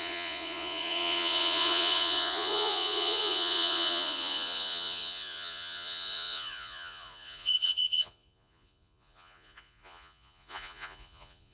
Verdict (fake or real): fake